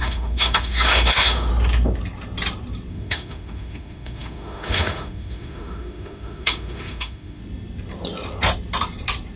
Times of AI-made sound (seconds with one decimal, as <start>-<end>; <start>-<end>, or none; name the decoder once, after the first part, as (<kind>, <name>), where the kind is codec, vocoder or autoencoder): 0.0-1.5 (autoencoder, DAC-VAE); 2.9-7.4